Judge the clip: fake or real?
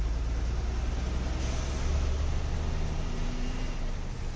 real